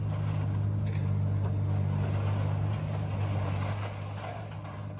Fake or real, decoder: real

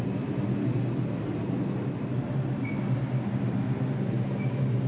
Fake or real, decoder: real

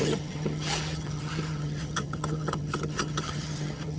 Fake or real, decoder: fake, vocoder, HiFi-GAN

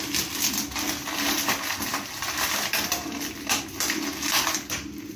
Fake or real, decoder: real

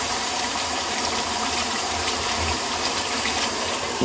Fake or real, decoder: fake, vocoder, BigVGAN v2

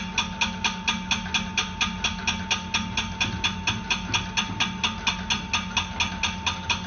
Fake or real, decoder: real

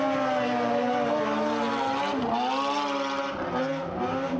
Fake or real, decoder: real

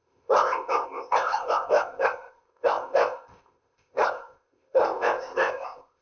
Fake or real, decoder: fake, codec, ZipCodec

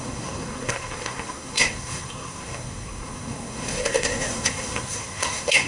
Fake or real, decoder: fake, codec, SNAC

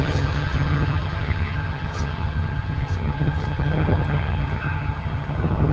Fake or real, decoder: fake, vocoder, HiFi-GAN